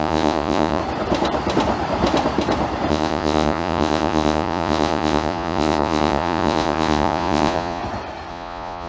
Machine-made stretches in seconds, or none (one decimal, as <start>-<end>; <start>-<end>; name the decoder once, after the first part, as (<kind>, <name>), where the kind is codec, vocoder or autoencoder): 0.0-0.8 (vocoder, Vocos); 2.9-7.8; 8.3-8.9